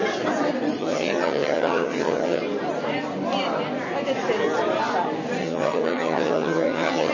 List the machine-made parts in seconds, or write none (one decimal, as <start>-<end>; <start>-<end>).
0.8-2.4; 5.4-7.1